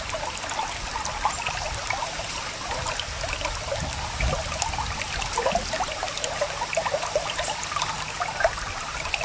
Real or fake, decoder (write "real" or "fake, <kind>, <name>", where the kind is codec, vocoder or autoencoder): real